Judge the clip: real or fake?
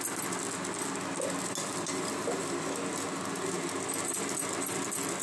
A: real